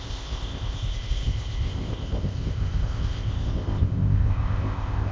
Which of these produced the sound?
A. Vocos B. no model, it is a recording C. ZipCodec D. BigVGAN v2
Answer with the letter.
C